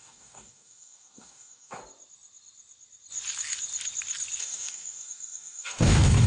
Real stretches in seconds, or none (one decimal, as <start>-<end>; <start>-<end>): 1.8-4.4